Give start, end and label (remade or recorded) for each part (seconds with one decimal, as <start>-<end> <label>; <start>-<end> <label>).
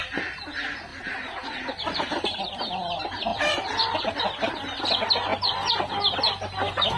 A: 0.0-0.9 recorded; 0.9-2.4 remade; 2.4-3.3 recorded; 3.3-4.2 remade; 4.2-5.3 recorded; 5.3-6.1 remade; 6.1-7.0 recorded